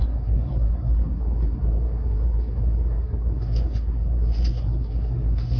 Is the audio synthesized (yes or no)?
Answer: yes